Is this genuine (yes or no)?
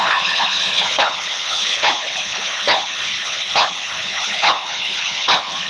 no